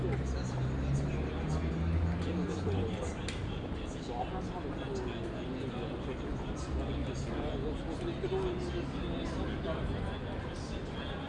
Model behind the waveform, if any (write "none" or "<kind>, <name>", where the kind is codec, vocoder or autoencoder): none